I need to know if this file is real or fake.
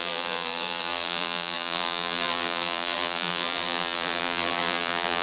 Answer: fake